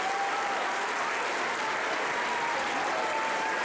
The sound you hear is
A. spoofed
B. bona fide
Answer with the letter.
B